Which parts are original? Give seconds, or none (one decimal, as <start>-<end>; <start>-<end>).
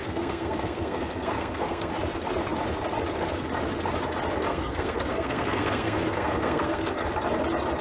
1.9-4.5; 7.1-7.8